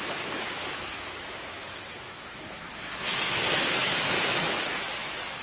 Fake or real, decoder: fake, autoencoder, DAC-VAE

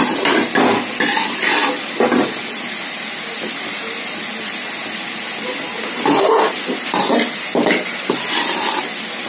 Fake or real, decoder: real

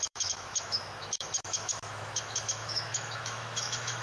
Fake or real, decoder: fake, autoencoder, DAC-VAE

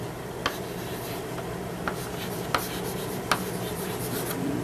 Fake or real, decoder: real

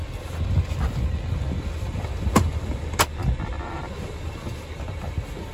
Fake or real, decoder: real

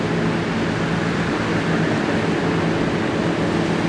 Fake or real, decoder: real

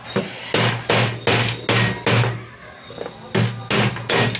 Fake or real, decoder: real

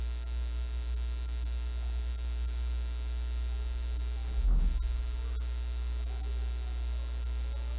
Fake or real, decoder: real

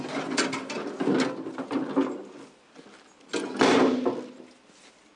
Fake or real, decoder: real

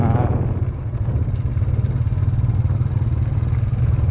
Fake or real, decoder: real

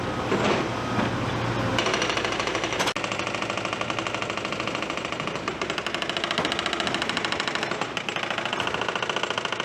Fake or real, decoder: real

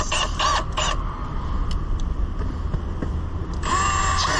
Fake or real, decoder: real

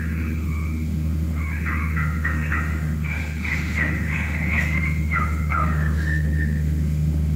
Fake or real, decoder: fake, autoencoder, DAC-VAE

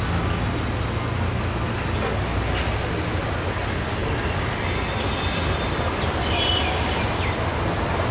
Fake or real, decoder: real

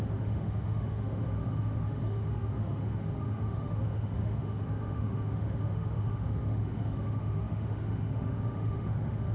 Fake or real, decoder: fake, autoencoder, DAC-VAE